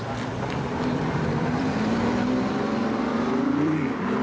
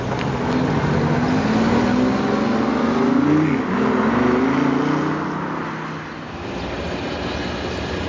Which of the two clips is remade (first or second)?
first